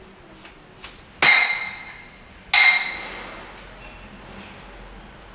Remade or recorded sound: recorded